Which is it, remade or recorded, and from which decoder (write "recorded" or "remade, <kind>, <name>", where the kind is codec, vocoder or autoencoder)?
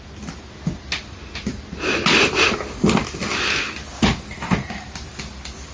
recorded